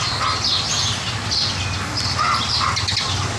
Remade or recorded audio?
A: recorded